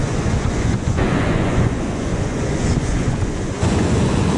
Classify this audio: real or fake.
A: fake